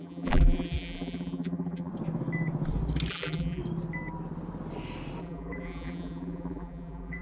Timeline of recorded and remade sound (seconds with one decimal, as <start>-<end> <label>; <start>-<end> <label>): 0.0-1.9 remade; 1.9-3.1 recorded; 3.1-3.6 remade; 3.6-5.2 recorded; 5.2-7.2 remade